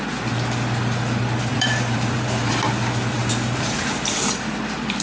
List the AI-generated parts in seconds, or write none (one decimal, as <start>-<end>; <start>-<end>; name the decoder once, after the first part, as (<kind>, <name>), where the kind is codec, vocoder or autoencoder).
1.5-2.5 (vocoder, BigVGAN v2); 3.2-4.1